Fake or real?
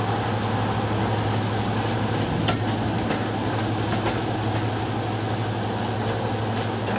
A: real